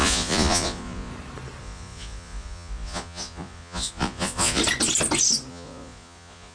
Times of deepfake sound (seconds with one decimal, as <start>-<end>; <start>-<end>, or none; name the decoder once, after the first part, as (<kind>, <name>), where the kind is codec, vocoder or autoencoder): 0.0-1.1 (vocoder, Vocos); 1.6-4.6; 5.5-6.5